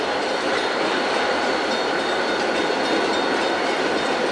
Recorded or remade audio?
recorded